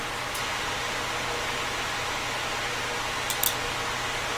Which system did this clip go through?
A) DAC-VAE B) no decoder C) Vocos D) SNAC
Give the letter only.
B